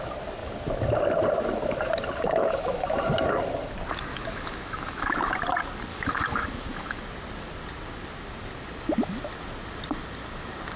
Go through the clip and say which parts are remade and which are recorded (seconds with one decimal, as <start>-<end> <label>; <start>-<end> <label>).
0.0-2.4 recorded; 2.4-2.9 remade; 2.9-4.1 recorded; 4.1-5.3 remade; 5.3-5.9 recorded; 5.9-7.0 remade; 7.0-10.8 recorded